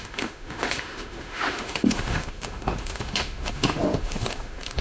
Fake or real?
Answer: fake